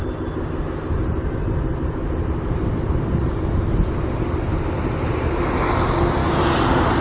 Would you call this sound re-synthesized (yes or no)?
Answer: no